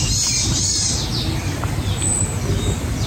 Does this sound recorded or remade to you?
recorded